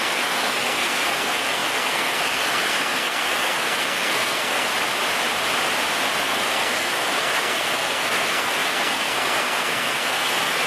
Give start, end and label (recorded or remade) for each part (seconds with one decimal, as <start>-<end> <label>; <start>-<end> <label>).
0.0-4.7 remade; 4.7-6.2 recorded; 6.2-10.7 remade